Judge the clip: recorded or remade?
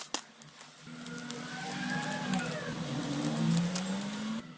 recorded